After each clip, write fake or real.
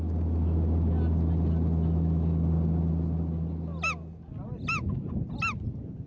real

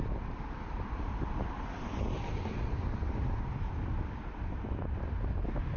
real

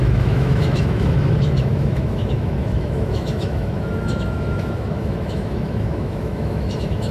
fake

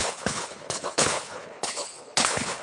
fake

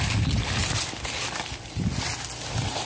real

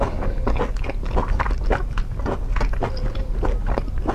real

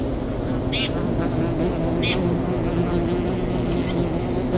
real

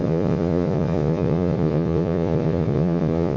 fake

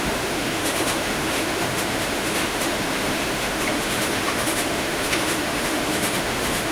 fake